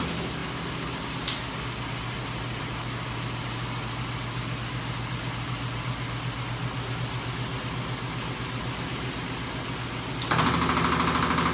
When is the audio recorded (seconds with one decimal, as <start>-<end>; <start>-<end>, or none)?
0.0-11.5